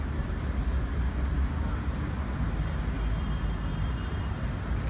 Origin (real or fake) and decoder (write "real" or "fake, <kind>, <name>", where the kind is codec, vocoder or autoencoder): real